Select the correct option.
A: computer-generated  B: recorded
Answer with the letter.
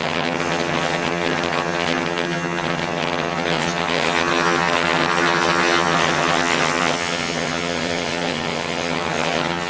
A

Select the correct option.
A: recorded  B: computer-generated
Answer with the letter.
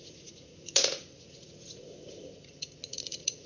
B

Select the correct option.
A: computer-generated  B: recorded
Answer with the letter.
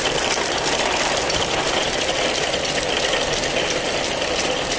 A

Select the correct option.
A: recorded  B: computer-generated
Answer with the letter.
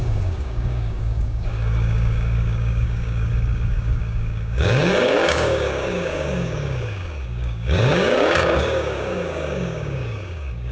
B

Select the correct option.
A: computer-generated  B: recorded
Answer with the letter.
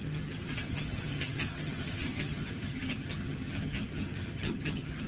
A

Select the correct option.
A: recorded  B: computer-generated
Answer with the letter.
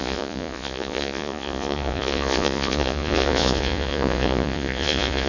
B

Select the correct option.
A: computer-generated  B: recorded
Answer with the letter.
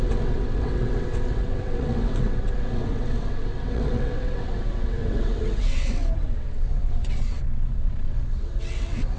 A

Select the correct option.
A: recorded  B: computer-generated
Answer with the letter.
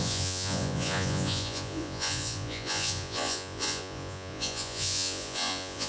B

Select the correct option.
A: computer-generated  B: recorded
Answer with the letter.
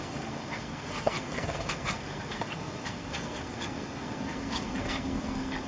A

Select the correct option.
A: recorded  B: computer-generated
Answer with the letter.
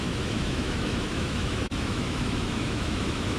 B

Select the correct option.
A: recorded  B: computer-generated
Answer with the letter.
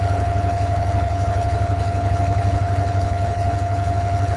B